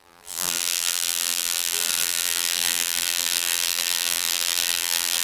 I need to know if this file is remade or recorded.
remade